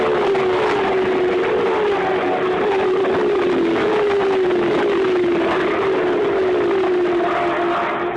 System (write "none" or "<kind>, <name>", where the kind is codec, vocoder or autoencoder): none